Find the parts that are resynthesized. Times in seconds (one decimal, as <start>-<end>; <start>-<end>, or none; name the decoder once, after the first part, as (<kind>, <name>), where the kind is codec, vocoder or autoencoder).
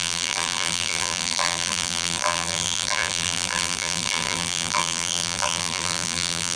0.0-6.6 (vocoder, BigVGAN v2)